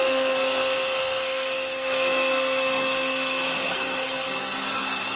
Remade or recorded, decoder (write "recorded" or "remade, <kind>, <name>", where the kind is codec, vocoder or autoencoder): remade, codec, SNAC